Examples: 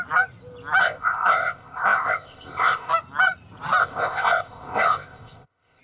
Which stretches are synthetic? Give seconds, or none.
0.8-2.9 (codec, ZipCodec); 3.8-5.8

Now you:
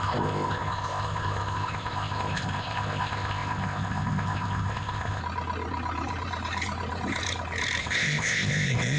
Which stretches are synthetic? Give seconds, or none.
0.0-5.2 (codec, ZipCodec); 7.8-9.0

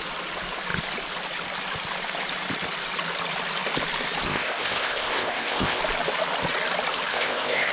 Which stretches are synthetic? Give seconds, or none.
4.3-5.8 (codec, ZipCodec); 7.1-7.7